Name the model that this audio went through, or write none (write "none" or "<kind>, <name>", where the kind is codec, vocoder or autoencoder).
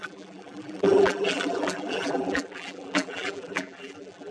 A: vocoder, BigVGAN v2